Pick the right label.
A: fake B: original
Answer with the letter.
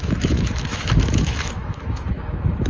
A